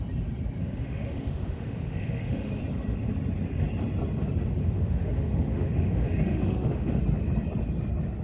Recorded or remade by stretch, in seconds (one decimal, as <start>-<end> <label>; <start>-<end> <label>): 0.0-0.6 recorded; 0.6-2.6 remade; 2.6-4.6 recorded; 4.6-7.0 remade; 7.0-8.2 recorded